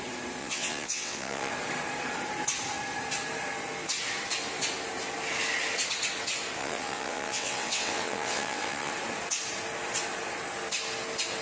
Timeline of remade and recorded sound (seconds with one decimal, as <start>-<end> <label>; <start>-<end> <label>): 0.0-0.4 recorded; 0.4-1.5 remade; 1.5-6.6 recorded; 6.6-8.9 remade; 8.9-11.4 recorded

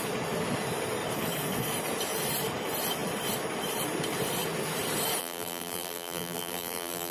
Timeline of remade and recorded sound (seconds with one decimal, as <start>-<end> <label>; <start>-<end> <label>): 0.0-5.2 recorded; 5.2-7.1 remade